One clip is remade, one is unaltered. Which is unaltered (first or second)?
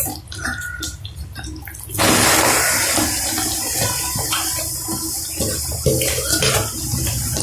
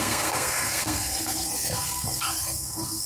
first